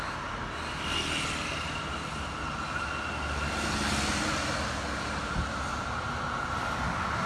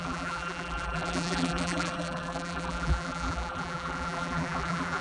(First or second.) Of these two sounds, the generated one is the second